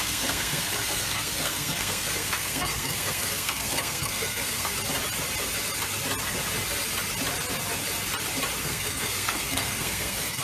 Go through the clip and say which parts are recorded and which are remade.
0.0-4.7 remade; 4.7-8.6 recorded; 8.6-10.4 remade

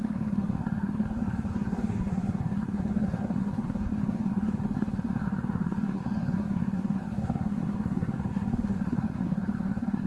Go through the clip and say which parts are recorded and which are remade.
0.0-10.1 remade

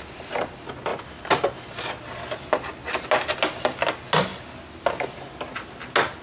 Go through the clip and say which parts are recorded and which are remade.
0.0-6.2 recorded

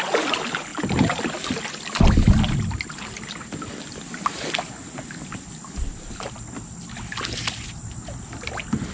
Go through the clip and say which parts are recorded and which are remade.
0.0-0.7 recorded; 0.7-3.9 remade; 3.9-5.8 recorded; 5.8-7.0 remade; 7.0-8.9 recorded

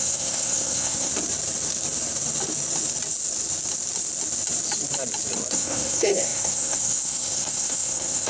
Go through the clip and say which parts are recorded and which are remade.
0.0-1.1 remade; 1.1-5.5 recorded; 5.5-8.3 remade

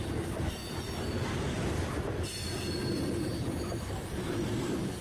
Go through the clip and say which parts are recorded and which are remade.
0.0-0.6 remade; 0.6-3.6 recorded; 3.6-5.0 remade

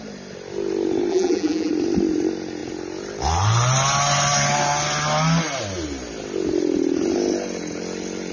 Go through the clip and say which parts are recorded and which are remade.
0.0-1.1 recorded; 1.1-1.7 remade; 1.7-8.3 recorded

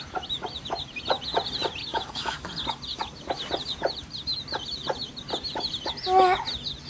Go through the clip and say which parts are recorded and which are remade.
0.0-1.9 recorded; 1.9-2.5 remade; 2.5-6.9 recorded